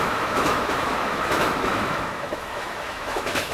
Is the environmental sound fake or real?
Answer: fake